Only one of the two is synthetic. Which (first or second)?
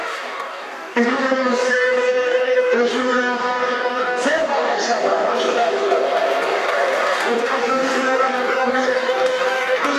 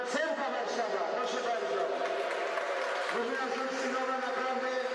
first